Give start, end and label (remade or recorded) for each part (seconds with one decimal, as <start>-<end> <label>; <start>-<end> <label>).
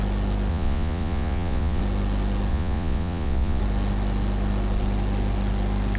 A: 0.0-0.5 recorded; 0.5-1.8 remade; 1.8-2.5 recorded; 2.5-3.6 remade; 3.6-6.0 recorded